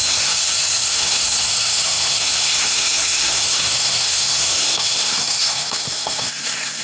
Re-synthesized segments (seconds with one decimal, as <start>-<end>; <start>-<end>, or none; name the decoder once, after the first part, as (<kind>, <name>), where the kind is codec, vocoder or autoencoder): 0.0-6.8 (codec, SNAC)